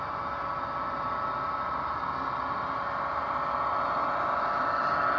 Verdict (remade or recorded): recorded